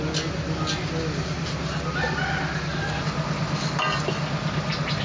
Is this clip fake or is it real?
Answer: real